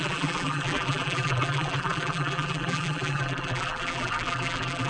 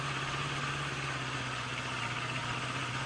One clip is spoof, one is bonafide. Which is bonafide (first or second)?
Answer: second